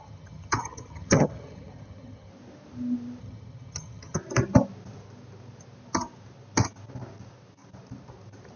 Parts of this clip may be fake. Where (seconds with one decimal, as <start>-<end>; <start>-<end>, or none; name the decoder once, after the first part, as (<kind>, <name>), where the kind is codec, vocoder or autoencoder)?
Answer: 0.0-2.3 (vocoder, HiFi-GAN); 3.2-4.2